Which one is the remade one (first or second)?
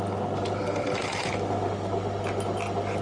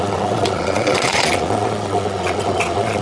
second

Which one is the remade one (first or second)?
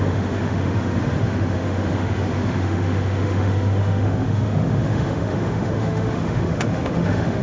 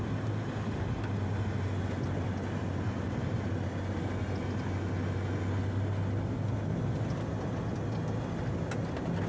first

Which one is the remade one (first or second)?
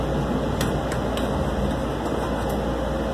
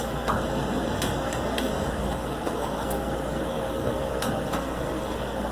second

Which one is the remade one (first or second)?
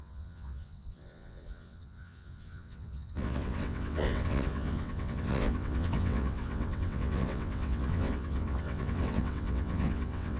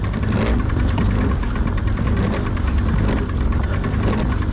first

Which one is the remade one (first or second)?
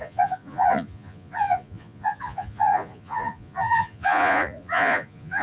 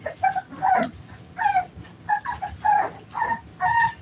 first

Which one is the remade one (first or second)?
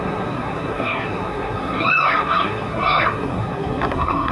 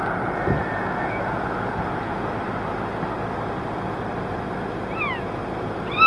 first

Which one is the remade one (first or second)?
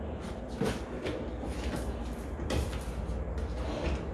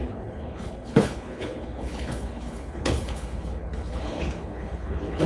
second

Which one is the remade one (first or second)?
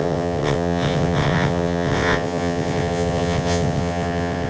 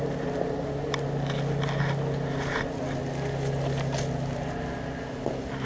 first